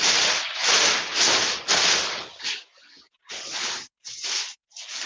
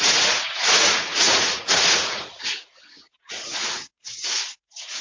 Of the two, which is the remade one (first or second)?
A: second